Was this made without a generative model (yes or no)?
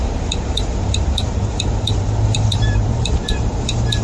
no